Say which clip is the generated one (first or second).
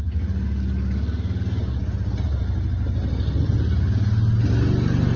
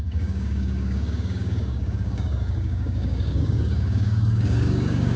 second